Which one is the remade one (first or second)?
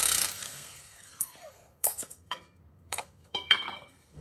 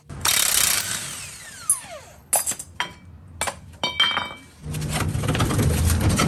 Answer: first